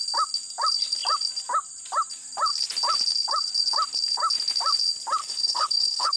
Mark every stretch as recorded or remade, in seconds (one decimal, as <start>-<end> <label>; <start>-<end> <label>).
0.0-5.2 recorded; 5.2-6.2 remade